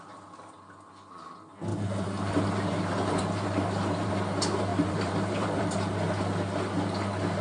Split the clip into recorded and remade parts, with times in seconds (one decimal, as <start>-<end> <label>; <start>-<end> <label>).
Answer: 0.0-1.7 recorded; 1.7-4.1 remade; 4.1-4.7 recorded; 4.7-5.6 remade; 5.6-7.4 recorded